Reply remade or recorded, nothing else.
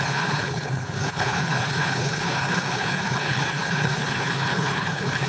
remade